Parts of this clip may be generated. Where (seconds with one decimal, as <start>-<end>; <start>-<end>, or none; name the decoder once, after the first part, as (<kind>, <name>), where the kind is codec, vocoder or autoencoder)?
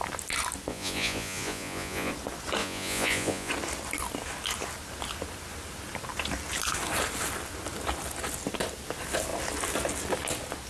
0.7-2.1 (vocoder, Vocos); 2.6-3.5